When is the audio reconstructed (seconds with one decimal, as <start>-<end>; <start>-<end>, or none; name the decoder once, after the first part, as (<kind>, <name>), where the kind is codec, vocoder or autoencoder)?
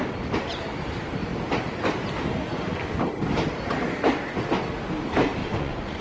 5.4-6.0 (vocoder, Vocos)